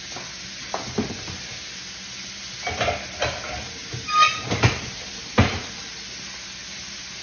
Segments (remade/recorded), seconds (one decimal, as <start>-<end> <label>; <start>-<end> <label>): 0.0-7.2 recorded